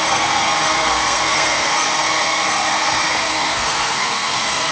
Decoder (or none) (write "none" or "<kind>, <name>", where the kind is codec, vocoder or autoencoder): codec, SNAC